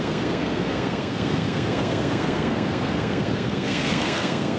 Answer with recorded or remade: remade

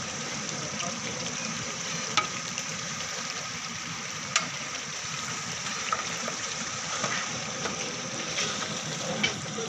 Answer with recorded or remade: remade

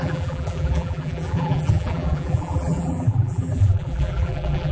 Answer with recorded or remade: remade